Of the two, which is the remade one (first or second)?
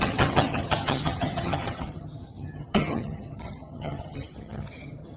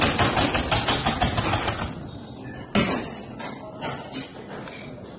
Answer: first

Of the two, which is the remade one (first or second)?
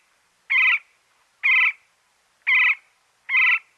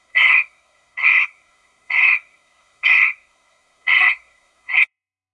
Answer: second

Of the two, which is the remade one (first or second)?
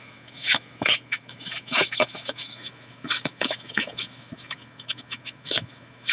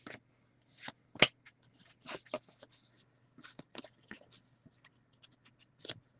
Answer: first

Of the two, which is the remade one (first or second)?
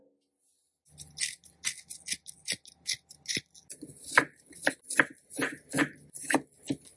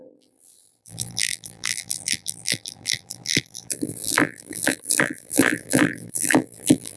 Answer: second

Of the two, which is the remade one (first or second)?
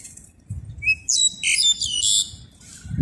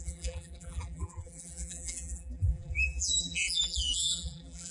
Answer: second